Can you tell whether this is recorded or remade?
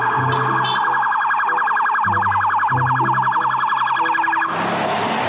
recorded